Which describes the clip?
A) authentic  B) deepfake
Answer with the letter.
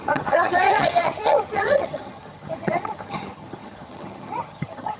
B